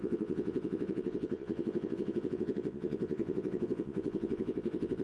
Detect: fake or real fake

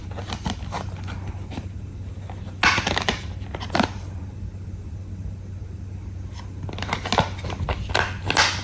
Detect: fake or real real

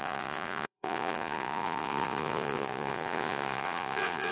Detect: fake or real fake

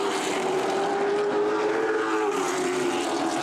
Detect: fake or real real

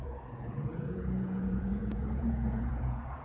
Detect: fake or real fake